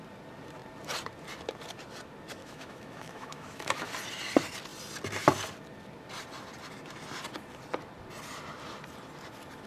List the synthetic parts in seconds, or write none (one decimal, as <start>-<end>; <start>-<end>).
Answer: 2.4-3.9